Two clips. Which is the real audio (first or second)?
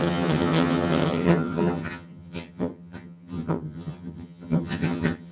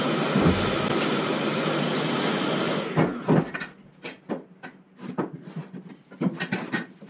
second